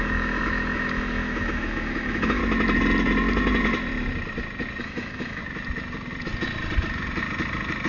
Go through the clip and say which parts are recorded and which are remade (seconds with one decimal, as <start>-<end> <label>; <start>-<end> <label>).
0.0-2.4 remade; 2.4-4.8 recorded; 4.8-5.4 remade; 5.4-7.9 recorded